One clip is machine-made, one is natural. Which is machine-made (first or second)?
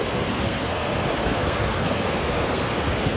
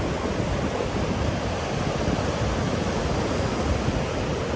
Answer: first